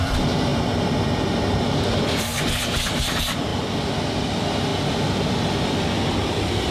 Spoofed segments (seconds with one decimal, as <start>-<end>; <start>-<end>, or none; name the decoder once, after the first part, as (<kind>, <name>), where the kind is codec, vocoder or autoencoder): 0.0-3.5 (vocoder, BigVGAN v2); 4.3-4.7; 6.1-6.7